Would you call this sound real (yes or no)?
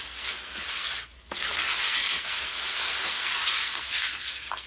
no